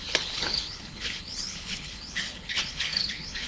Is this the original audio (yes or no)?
no